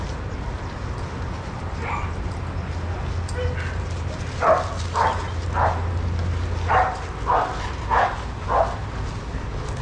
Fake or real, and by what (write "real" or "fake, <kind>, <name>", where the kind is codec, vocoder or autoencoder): real